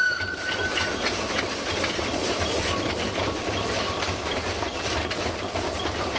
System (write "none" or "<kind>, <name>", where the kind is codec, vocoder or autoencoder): none